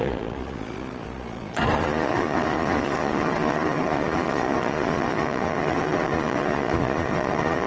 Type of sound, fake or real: fake